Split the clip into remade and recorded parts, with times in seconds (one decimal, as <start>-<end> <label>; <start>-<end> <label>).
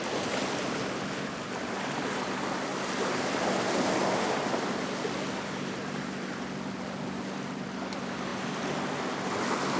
0.0-2.7 recorded; 2.7-3.3 remade; 3.3-9.8 recorded